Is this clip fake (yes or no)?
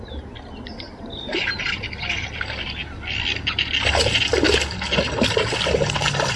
no